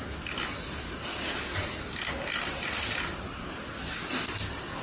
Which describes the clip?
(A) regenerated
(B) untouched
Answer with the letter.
B